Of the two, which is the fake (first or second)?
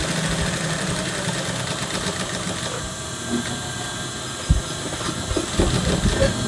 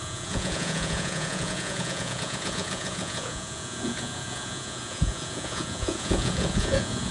second